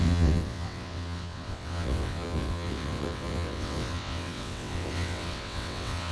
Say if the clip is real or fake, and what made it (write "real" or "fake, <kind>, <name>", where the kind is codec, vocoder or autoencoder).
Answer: fake, vocoder, WaveNeXt